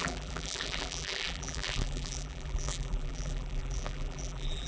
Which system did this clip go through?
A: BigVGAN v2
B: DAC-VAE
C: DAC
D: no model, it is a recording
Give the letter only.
A